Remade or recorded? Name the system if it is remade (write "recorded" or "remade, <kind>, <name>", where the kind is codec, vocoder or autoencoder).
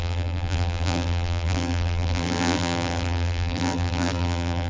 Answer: remade, vocoder, BigVGAN v2